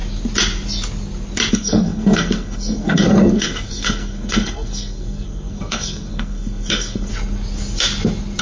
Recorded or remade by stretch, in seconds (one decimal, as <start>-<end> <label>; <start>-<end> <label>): 0.0-1.5 recorded; 1.5-7.1 remade; 7.1-8.4 recorded